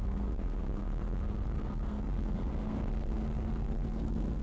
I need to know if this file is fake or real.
fake